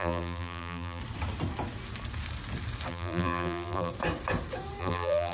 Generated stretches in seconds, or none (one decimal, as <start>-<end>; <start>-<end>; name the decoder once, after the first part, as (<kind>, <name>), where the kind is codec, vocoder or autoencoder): 0.0-1.0 (vocoder, BigVGAN v2); 2.9-3.9; 4.8-5.3